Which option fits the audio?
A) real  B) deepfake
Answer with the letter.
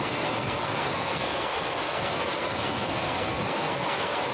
B